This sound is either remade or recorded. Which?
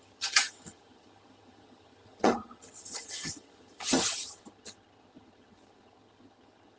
remade